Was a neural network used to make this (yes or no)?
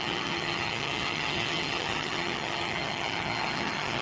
yes